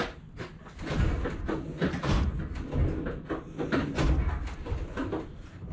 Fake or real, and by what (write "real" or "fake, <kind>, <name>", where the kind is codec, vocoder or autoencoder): real